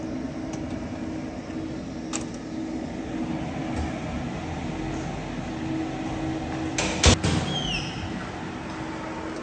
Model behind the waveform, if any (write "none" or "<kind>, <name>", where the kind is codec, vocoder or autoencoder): none